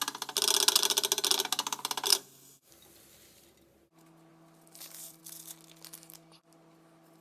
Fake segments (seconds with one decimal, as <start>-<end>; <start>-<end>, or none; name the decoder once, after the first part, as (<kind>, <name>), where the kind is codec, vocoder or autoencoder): 2.1-2.7 (codec, DAC)